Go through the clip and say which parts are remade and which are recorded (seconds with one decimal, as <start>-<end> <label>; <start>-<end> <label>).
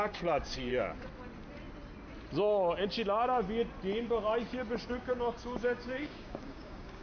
0.0-0.7 remade; 0.7-4.9 recorded; 4.9-7.0 remade